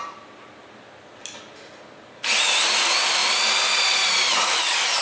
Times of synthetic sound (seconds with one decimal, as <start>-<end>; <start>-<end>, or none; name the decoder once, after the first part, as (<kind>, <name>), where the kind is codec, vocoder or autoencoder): none